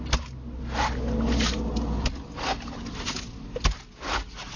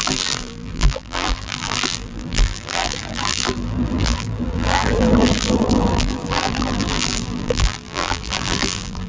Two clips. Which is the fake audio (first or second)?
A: second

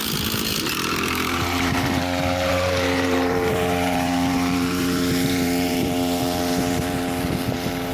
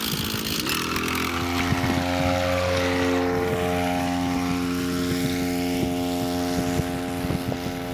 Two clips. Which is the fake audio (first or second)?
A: first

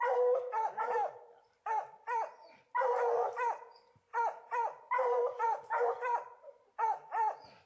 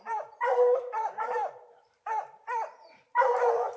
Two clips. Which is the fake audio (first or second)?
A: second